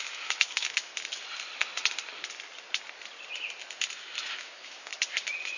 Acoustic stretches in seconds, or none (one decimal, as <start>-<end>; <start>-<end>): 0.9-4.3; 4.9-5.6